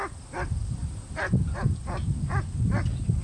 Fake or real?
real